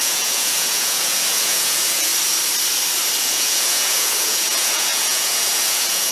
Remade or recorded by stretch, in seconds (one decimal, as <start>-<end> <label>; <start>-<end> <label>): 0.0-2.1 remade; 2.1-3.2 recorded; 3.2-6.1 remade